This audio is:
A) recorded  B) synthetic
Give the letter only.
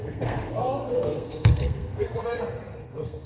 B